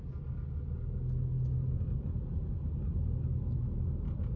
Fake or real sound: real